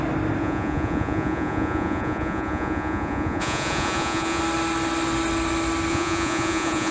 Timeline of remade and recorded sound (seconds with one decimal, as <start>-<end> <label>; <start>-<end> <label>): 0.0-0.4 recorded; 0.4-4.4 remade; 4.4-5.9 recorded; 5.9-6.9 remade